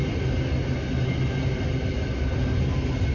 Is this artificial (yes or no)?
no